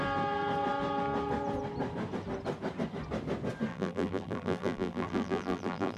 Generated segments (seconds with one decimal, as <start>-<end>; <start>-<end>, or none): 3.7-6.0